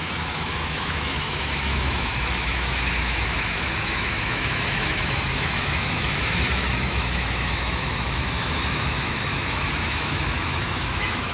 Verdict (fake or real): fake